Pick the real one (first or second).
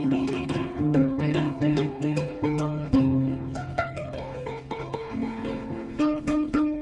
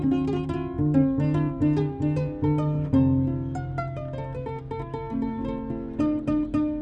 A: second